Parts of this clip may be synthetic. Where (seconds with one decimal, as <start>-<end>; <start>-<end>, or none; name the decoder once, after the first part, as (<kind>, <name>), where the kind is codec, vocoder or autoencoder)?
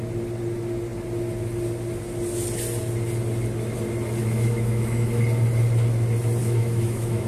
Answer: 4.2-5.2 (autoencoder, DAC-VAE); 6.4-7.3